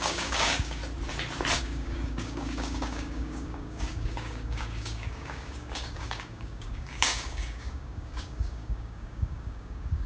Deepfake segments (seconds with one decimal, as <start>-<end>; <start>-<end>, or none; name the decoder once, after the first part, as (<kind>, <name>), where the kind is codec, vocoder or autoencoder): 0.0-0.8 (codec, DAC); 1.6-10.1